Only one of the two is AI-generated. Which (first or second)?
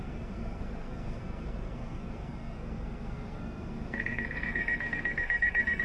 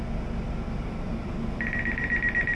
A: first